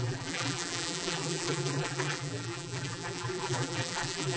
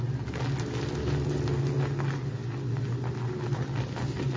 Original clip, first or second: second